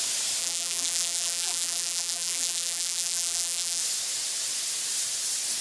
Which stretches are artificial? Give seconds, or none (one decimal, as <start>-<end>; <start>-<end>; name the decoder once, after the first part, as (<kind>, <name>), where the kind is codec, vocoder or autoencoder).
0.4-3.8 (vocoder, BigVGAN v2)